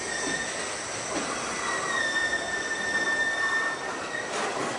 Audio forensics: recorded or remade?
recorded